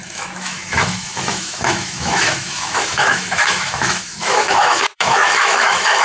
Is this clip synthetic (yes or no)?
yes